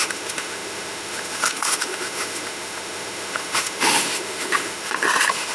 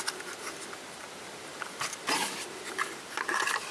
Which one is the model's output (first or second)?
first